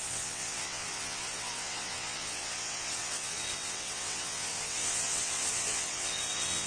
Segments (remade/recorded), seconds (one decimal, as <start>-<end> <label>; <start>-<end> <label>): 0.0-6.7 remade